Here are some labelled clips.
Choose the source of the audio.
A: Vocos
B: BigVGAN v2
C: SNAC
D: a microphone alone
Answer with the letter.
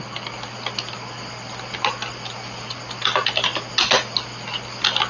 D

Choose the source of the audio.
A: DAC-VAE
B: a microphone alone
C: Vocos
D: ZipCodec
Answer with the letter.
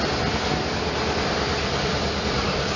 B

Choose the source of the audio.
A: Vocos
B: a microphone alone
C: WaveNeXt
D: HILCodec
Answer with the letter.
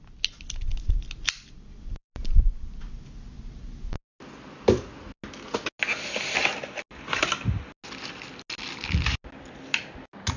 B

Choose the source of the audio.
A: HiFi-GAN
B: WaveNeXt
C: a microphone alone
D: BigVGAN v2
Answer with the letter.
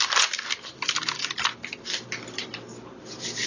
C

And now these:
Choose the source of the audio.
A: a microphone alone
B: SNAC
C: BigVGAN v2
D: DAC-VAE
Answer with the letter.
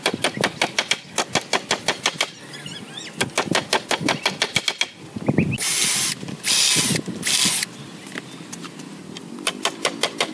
A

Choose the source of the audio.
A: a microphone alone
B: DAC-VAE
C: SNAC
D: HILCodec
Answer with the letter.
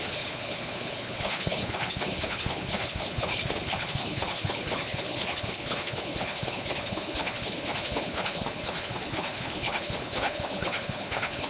D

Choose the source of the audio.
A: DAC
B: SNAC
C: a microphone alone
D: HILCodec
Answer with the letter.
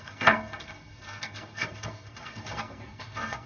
B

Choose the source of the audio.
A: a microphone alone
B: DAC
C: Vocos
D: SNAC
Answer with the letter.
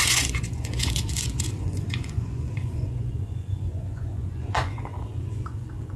C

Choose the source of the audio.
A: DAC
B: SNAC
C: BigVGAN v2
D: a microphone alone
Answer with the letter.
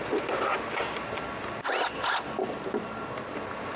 D